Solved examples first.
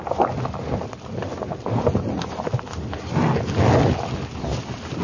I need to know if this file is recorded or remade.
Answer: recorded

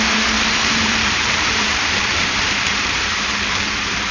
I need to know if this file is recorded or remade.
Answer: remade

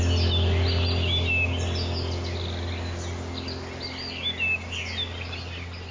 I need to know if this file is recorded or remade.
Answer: recorded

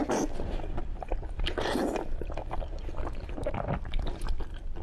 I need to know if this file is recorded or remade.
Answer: recorded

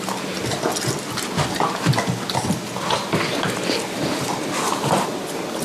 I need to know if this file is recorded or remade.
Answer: recorded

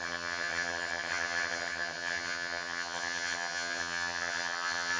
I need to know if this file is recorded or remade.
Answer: remade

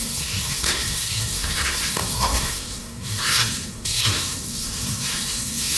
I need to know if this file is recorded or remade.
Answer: remade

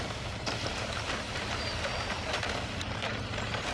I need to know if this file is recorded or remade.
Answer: recorded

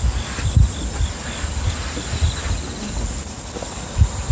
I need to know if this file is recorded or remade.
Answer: recorded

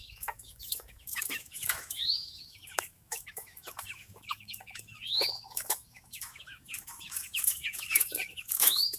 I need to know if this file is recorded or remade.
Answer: remade